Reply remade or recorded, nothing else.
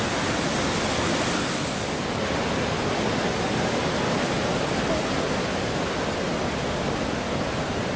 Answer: recorded